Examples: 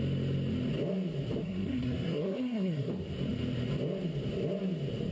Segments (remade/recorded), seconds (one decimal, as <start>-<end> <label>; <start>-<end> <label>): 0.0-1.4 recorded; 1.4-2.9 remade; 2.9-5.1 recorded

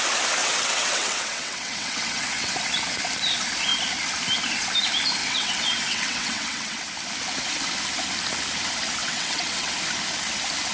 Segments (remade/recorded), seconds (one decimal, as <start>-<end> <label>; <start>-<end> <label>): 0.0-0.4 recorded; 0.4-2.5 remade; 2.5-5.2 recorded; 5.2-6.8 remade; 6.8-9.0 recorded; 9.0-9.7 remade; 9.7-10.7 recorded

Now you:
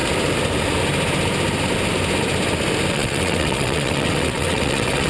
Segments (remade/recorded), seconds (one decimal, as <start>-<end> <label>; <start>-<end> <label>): 0.0-2.9 recorded; 2.9-5.1 remade

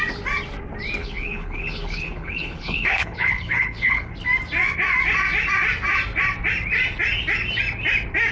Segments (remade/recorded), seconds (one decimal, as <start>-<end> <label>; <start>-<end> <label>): 0.0-1.0 recorded; 1.0-4.1 remade; 4.1-8.3 recorded